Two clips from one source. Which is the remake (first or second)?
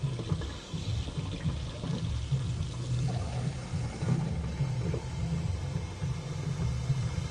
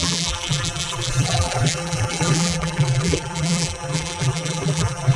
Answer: second